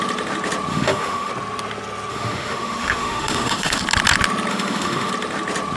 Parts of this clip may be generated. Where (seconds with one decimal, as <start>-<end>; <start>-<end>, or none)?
0.7-1.3; 2.1-3.8; 4.5-5.1

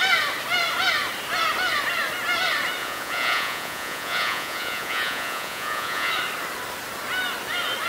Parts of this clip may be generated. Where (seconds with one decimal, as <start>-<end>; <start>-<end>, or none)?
2.8-6.1

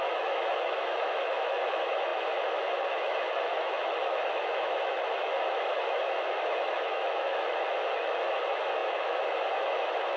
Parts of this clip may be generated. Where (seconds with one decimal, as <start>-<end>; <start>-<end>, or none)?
0.0-10.2